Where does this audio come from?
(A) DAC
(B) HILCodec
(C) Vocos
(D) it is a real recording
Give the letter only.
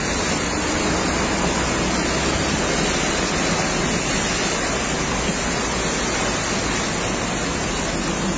D